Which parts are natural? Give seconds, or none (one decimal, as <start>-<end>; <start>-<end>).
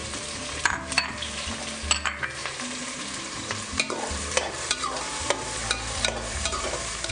1.6-2.4